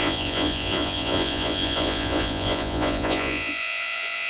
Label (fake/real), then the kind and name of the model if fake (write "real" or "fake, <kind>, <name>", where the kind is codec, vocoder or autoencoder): fake, vocoder, Vocos